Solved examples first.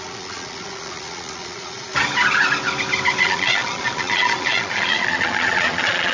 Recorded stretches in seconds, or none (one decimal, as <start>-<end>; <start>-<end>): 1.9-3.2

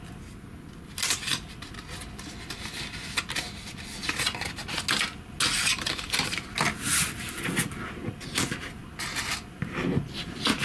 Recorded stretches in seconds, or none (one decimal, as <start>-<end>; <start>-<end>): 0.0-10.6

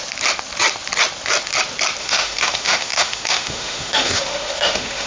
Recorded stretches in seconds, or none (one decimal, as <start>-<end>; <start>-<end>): 0.0-2.0

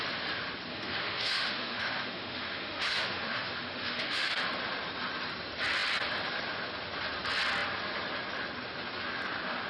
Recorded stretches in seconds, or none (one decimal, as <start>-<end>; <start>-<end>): 0.0-0.7; 4.3-9.7